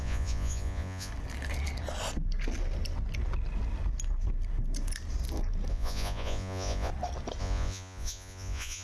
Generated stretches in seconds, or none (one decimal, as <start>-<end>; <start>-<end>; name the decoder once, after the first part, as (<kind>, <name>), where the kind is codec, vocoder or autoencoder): 0.0-1.1 (vocoder, Vocos); 5.7-6.9; 7.4-8.8